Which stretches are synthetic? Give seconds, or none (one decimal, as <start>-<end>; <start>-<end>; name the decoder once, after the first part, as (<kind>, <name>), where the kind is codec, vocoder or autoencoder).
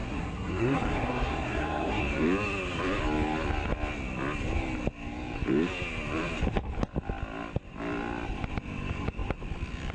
0.0-2.0 (codec, SNAC)